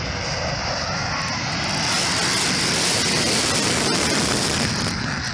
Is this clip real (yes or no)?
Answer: yes